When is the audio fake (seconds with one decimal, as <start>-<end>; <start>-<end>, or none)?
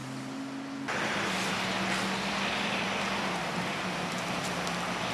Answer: none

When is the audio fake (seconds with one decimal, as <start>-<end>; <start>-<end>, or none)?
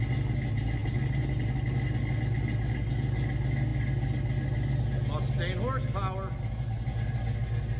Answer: none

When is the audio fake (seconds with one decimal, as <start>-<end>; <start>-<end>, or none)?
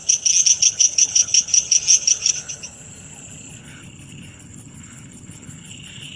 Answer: 0.6-1.5; 3.6-6.2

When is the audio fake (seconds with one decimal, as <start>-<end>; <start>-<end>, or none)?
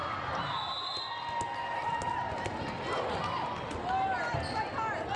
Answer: none